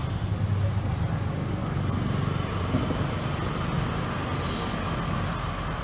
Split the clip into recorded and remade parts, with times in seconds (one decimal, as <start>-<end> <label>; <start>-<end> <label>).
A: 0.0-5.8 recorded